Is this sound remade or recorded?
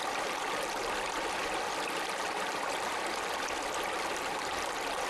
recorded